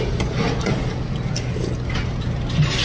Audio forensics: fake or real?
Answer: real